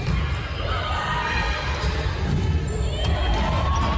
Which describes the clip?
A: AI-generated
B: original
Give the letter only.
B